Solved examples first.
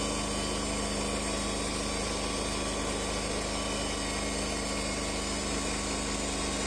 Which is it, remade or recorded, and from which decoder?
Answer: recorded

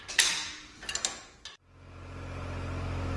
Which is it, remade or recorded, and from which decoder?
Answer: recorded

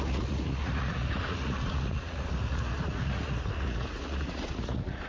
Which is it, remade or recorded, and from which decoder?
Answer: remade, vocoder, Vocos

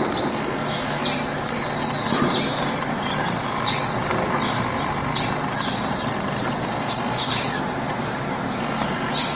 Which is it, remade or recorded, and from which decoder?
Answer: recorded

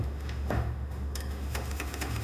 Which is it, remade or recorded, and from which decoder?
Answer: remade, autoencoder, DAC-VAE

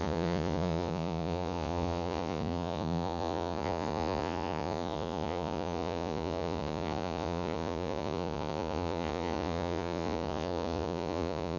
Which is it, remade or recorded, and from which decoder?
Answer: remade, vocoder, Vocos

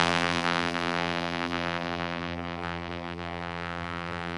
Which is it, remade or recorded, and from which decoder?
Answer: remade, vocoder, BigVGAN v2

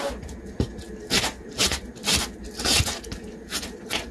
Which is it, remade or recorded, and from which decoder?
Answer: recorded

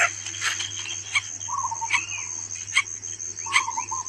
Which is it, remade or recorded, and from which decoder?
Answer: recorded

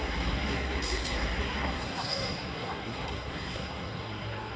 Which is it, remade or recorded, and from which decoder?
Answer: remade, codec, SNAC